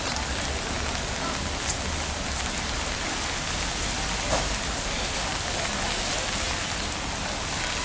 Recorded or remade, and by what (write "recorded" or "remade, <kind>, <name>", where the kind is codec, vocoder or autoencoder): recorded